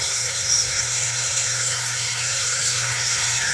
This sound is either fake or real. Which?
fake